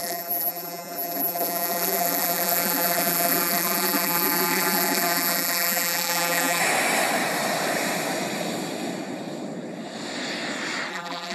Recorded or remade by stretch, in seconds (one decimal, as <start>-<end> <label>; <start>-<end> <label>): 0.0-6.6 remade; 6.6-10.9 recorded; 10.9-11.3 remade

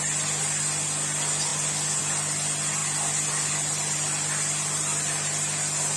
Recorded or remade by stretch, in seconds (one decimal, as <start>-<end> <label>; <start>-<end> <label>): 0.0-6.0 recorded

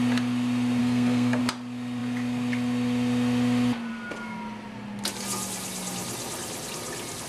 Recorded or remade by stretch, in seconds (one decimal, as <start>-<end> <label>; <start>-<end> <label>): 0.0-0.8 recorded; 0.8-1.4 remade; 1.4-7.3 recorded

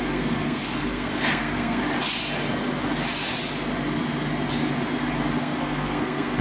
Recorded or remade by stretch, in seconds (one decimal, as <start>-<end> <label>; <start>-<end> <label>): 0.0-1.8 remade; 1.8-5.4 recorded; 5.4-6.4 remade